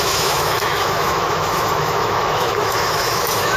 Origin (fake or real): fake